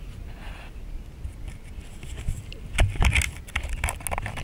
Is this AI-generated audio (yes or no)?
no